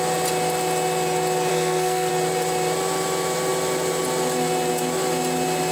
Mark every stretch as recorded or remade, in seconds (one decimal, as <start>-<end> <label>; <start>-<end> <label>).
0.0-1.5 recorded; 1.5-2.1 remade; 2.1-5.7 recorded